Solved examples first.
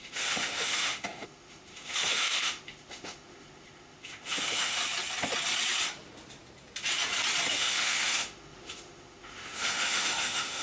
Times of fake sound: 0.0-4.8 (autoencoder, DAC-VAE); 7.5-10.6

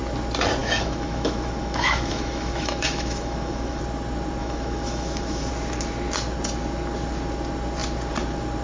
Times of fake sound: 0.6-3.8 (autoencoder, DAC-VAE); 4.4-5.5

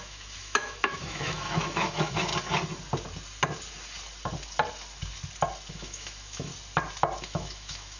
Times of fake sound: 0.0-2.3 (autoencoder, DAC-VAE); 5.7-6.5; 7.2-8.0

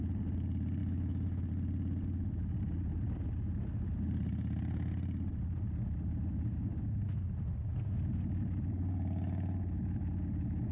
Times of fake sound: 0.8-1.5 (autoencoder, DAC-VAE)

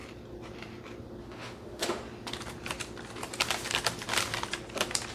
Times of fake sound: 1.2-2.0 (autoencoder, DAC-VAE)